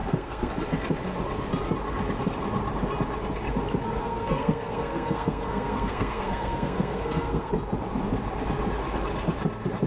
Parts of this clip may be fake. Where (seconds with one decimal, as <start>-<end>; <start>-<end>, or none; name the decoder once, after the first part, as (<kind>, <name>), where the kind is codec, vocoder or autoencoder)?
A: 0.0-0.5 (codec, SNAC); 4.0-7.5